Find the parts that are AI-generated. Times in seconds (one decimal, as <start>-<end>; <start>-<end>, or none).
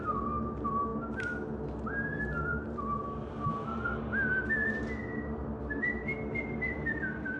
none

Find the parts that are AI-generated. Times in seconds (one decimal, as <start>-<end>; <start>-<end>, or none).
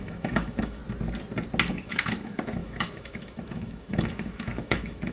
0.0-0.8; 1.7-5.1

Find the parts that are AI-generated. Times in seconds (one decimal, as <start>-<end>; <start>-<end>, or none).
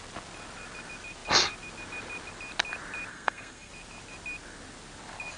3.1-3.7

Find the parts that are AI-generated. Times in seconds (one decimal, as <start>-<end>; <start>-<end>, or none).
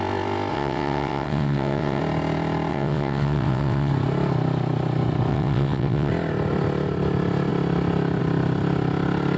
0.5-2.0; 2.7-3.9; 5.3-6.1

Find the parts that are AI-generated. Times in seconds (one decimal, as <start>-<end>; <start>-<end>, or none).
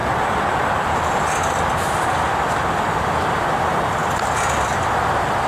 0.0-2.8